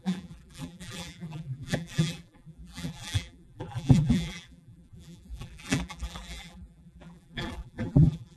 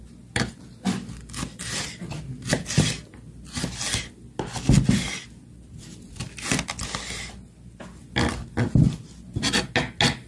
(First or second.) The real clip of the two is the second